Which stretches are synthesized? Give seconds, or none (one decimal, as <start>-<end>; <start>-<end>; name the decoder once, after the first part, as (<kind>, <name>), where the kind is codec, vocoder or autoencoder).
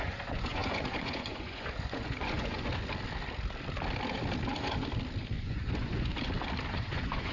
0.0-2.7 (vocoder, Vocos); 5.4-6.1; 6.7-7.3